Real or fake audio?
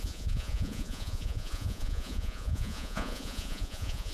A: fake